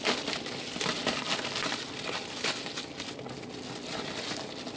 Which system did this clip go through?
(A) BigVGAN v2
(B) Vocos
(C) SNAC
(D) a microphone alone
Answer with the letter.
D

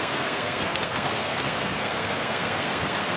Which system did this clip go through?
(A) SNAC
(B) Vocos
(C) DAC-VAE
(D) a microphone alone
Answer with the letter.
A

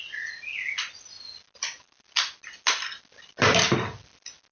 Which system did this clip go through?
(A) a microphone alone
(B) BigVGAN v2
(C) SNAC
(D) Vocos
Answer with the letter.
A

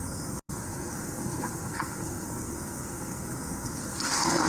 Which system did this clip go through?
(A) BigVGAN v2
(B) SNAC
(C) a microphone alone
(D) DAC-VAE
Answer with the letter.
B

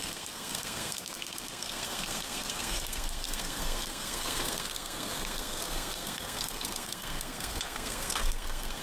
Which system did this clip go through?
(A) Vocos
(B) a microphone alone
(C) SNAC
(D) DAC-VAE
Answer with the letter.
C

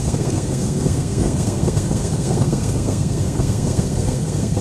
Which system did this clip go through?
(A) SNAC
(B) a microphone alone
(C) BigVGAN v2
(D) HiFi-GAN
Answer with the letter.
A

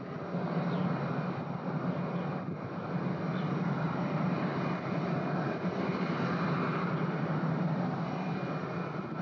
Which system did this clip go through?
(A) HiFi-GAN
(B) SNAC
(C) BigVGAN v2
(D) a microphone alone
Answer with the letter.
D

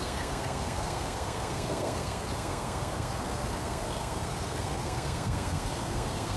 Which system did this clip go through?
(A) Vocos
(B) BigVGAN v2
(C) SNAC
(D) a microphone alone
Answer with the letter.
C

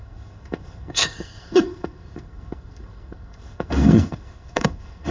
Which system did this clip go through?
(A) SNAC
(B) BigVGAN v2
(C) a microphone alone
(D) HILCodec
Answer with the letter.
A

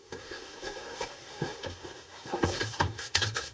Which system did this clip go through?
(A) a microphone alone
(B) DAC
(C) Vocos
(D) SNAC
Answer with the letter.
D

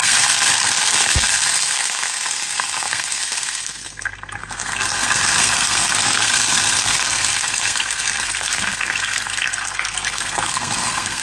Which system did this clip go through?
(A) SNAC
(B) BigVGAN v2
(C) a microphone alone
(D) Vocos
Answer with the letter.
A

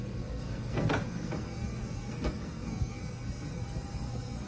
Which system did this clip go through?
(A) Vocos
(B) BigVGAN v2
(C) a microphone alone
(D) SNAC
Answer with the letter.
D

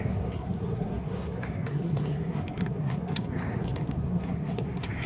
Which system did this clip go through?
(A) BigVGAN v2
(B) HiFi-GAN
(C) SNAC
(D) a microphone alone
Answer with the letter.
C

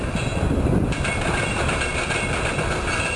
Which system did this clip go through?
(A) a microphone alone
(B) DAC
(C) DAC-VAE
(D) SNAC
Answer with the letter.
A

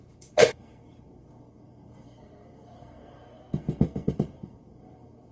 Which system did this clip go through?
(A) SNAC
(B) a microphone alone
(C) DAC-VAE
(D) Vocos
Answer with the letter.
A